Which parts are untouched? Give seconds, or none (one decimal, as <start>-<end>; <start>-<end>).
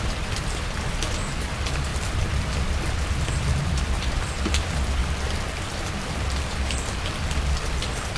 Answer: 5.0-5.6